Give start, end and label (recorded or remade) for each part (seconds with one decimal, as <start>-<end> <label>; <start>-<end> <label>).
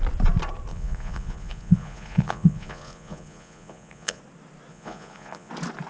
0.0-0.7 recorded; 0.7-4.2 remade; 4.2-4.7 recorded; 4.7-5.5 remade; 5.5-5.9 recorded